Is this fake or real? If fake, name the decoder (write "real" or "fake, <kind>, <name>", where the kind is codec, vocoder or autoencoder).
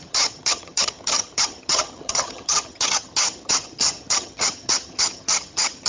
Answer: fake, vocoder, HiFi-GAN